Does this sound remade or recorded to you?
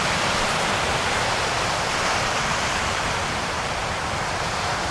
remade